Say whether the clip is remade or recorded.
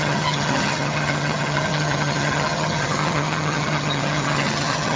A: remade